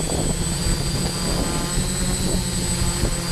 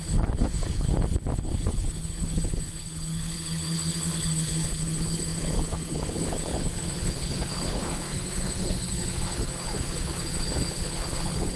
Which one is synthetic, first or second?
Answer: second